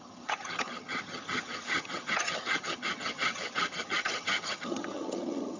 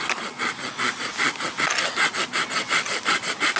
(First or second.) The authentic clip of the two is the second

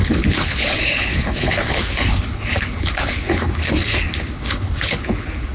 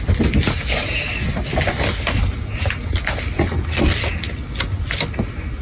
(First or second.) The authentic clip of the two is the second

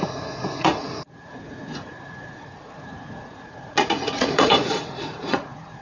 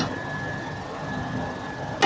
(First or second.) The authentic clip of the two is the second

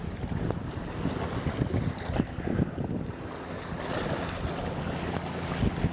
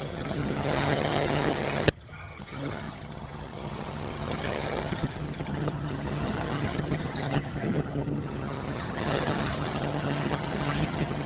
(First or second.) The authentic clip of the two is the first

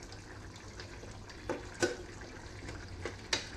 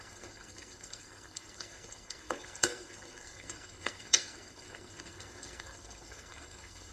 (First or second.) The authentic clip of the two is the first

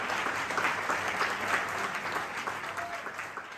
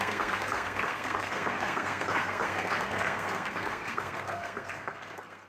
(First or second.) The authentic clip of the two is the first